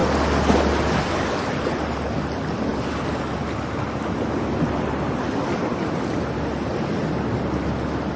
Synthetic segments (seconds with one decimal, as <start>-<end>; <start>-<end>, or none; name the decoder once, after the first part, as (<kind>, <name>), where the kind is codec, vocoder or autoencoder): none